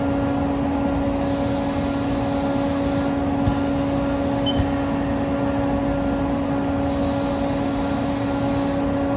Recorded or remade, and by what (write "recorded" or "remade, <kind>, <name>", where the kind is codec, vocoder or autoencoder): recorded